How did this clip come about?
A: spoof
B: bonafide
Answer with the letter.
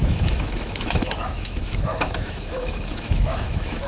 A